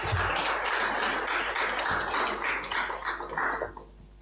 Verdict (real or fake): real